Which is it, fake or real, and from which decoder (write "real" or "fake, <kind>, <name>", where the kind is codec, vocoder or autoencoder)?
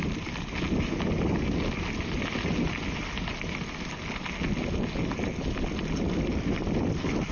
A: real